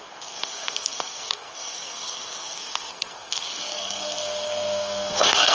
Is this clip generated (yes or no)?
yes